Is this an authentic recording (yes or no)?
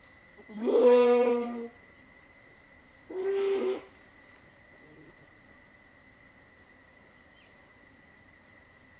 no